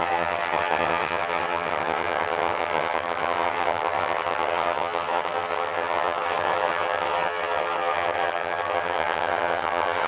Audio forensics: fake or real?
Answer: fake